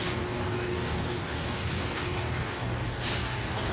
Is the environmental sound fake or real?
fake